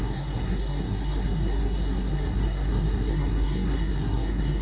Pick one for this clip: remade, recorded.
remade